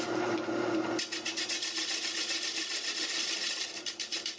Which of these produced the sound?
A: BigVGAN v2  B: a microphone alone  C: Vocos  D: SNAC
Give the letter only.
B